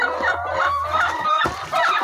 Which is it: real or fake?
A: real